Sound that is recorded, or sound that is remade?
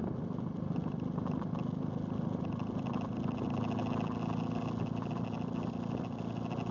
recorded